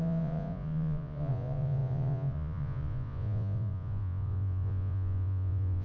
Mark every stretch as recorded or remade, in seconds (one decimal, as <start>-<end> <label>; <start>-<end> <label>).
0.0-5.8 remade

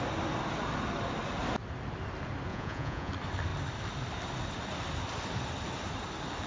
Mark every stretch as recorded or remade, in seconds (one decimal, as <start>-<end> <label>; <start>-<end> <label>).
0.0-2.5 recorded; 2.5-3.1 remade; 3.1-6.5 recorded

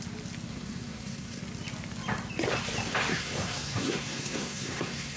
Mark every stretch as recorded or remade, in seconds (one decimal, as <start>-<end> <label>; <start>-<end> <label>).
0.0-0.5 recorded; 0.5-1.4 remade; 1.4-3.1 recorded; 3.1-5.2 remade

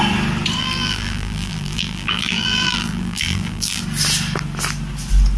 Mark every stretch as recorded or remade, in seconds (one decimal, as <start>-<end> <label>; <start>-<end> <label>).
0.0-0.6 recorded; 0.6-3.8 remade; 3.8-5.4 recorded

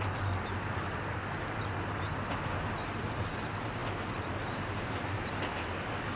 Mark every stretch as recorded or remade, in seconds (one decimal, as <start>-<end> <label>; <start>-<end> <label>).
0.0-6.2 recorded

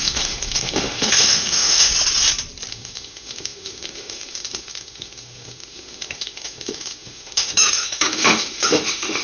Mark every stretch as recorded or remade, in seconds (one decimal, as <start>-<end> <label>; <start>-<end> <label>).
0.0-1.9 remade; 1.9-2.7 recorded; 2.7-9.2 remade